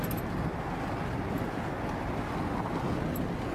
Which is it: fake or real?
real